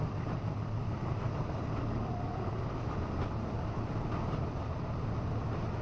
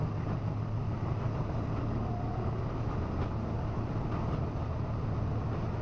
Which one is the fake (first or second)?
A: first